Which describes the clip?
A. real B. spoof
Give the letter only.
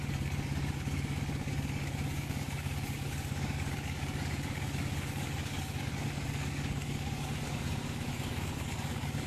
B